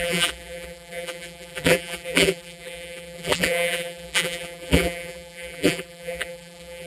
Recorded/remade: remade